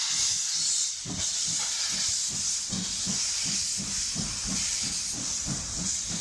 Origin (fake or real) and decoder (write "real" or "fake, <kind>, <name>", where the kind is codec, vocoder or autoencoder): real